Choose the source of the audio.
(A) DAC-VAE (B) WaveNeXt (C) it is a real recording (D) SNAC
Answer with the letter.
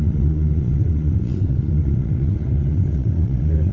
B